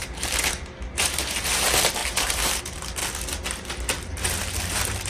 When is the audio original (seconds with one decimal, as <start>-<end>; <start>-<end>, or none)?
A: 3.0-3.7